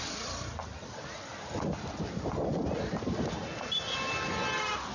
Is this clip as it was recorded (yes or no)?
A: yes